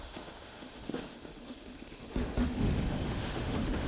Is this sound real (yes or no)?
no